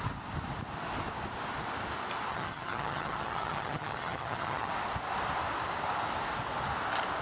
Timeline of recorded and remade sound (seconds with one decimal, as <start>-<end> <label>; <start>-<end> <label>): 0.0-2.3 recorded; 2.3-4.7 remade; 4.7-7.2 recorded